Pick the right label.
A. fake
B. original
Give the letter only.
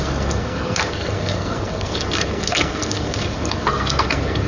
A